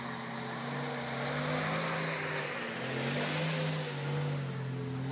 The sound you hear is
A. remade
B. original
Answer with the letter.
B